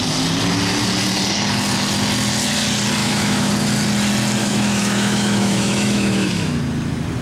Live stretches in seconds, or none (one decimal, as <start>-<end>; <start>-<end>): 0.0-3.0; 3.5-4.4; 6.6-7.2